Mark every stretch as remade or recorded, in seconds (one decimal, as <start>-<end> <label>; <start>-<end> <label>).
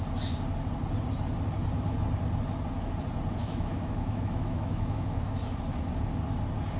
0.0-3.4 recorded; 3.4-5.4 remade; 5.4-6.8 recorded